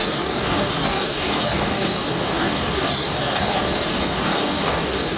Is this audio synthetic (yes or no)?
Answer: yes